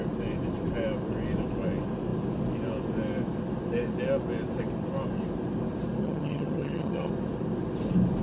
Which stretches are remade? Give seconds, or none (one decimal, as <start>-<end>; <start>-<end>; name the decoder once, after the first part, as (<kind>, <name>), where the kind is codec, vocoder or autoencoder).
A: 6.0-7.1 (vocoder, HiFi-GAN)